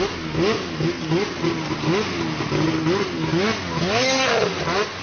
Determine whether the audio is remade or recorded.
recorded